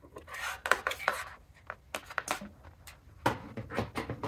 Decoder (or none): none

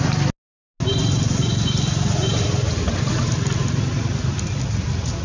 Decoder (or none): none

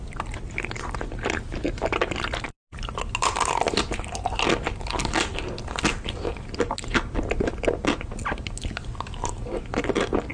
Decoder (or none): none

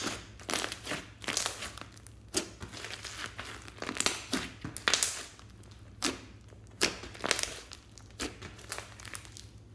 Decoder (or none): none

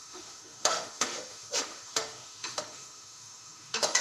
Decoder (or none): autoencoder, DAC-VAE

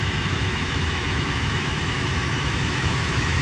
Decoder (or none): autoencoder, DAC-VAE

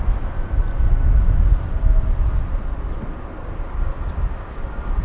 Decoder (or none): none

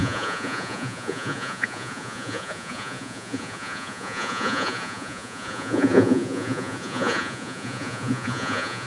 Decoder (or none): vocoder, Vocos